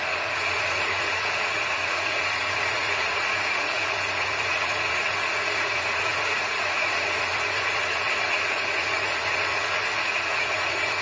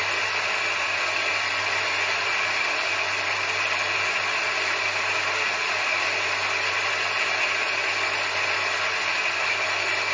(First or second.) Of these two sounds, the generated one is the first